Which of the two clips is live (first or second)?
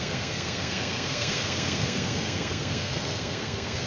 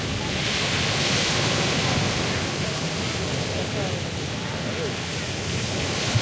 second